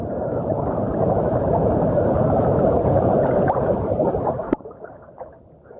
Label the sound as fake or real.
fake